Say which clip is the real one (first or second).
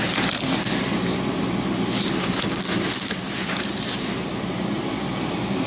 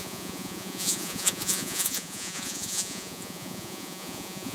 first